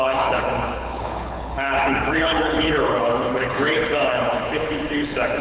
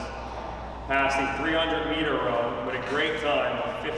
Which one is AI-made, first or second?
first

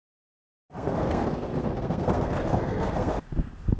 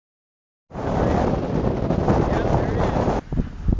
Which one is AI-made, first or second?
first